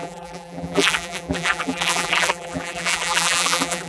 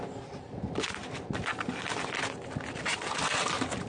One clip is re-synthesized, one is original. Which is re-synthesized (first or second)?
first